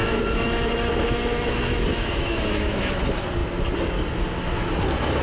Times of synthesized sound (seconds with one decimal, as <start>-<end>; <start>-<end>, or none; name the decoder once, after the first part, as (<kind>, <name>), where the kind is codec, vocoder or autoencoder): 0.0-3.0 (autoencoder, DAC-VAE)